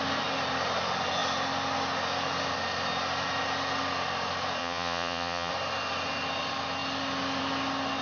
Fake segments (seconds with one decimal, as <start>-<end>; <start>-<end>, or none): 4.6-5.5